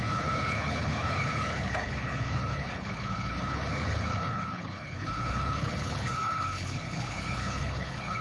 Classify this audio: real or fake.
fake